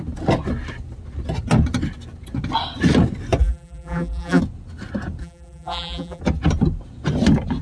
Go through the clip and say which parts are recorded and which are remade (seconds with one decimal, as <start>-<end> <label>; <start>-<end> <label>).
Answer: 0.0-3.4 recorded; 3.4-4.4 remade; 4.4-5.2 recorded; 5.2-6.2 remade; 6.2-7.6 recorded